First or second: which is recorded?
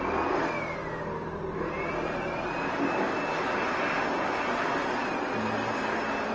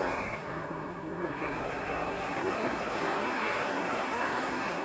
first